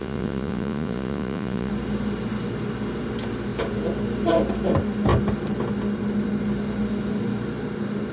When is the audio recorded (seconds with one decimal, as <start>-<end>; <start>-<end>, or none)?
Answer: 1.7-8.1